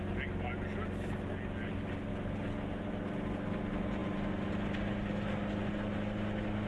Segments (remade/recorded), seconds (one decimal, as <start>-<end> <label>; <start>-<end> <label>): 0.0-6.7 recorded